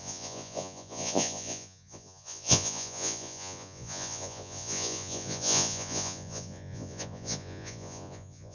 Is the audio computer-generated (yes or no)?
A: yes